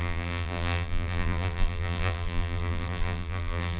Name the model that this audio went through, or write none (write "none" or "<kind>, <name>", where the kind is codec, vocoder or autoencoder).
vocoder, BigVGAN v2